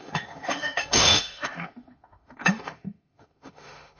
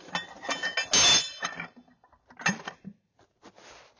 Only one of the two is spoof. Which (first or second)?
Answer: first